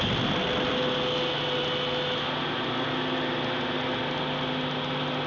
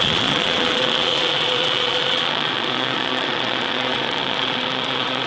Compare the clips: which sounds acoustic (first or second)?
first